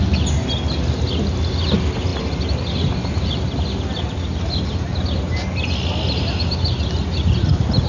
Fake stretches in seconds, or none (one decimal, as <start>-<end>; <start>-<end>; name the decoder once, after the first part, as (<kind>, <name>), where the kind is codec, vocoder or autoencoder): none